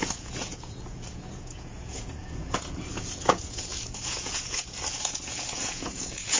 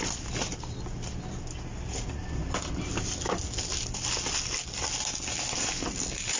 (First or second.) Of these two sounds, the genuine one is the second